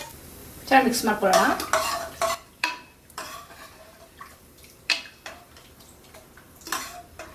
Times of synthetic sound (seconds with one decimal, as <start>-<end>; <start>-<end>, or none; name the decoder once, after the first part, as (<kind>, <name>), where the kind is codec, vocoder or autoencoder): 0.4-1.1 (vocoder, BigVGAN v2); 2.4-6.6